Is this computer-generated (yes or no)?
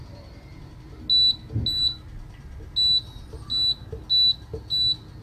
no